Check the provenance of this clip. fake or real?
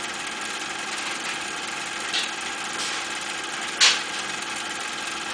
real